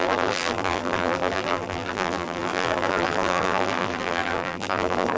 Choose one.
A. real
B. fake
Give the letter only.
B